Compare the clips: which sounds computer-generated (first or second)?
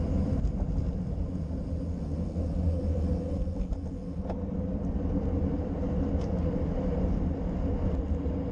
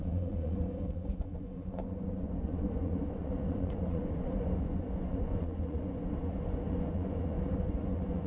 second